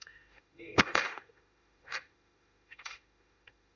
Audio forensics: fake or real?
fake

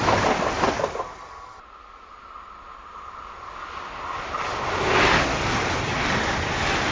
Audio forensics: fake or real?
real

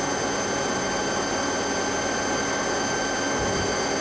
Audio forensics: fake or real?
real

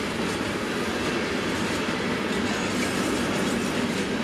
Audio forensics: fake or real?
real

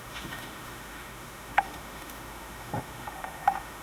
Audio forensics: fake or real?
fake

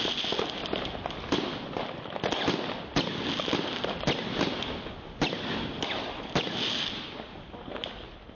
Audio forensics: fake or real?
real